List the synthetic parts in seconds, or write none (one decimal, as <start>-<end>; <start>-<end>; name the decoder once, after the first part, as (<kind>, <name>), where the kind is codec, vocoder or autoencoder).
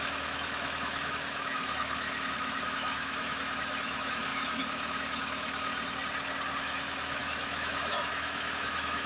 0.0-5.7 (autoencoder, DAC-VAE); 6.6-9.1